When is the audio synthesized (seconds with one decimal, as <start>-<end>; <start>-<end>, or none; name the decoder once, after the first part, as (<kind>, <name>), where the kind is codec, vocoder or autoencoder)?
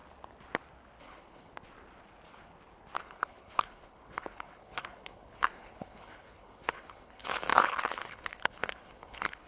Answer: 1.0-1.5 (codec, HILCodec); 3.0-9.5